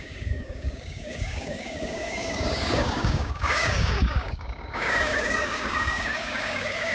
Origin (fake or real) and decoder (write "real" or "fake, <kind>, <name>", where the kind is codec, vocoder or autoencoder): fake, codec, DAC